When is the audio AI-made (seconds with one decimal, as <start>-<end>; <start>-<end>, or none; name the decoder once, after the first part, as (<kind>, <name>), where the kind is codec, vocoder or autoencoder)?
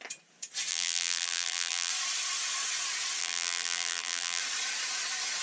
0.7-1.9 (vocoder, BigVGAN v2); 3.2-4.4